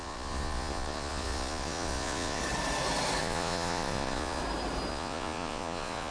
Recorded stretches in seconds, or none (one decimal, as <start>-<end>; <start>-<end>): 2.4-3.2; 4.4-4.9